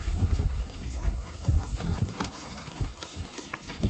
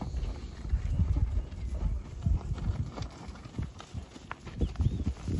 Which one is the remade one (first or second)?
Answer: first